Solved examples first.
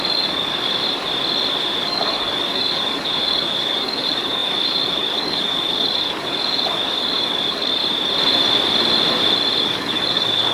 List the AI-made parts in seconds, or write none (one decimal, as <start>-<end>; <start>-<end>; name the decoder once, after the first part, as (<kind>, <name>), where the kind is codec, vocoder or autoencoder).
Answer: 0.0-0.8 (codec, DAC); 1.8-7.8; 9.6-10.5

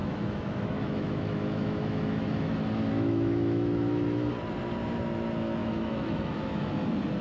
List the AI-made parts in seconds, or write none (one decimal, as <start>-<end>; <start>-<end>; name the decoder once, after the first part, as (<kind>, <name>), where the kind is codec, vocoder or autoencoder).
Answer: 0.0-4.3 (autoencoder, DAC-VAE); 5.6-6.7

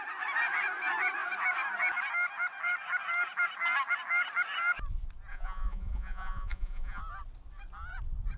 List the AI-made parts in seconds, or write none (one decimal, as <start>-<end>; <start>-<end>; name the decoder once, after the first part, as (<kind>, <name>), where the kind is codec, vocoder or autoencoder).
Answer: 5.3-7.0 (vocoder, Vocos)